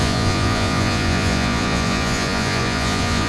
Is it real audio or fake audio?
fake